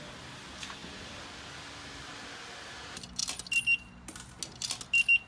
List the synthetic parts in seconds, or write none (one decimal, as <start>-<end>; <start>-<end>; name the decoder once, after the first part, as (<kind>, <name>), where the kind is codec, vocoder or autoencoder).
none